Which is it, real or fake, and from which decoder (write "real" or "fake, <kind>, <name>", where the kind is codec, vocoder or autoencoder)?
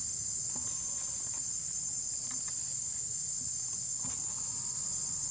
real